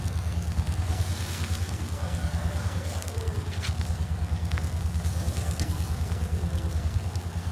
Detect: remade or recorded remade